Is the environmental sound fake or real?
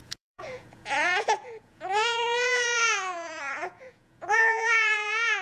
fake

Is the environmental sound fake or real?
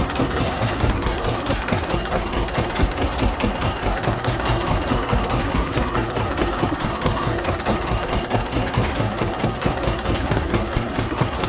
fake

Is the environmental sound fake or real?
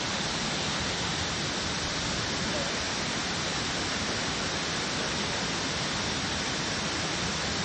real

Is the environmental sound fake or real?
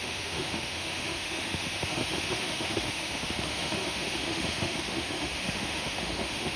fake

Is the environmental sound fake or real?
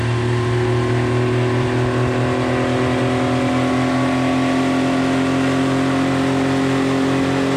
real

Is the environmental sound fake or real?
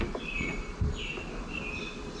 real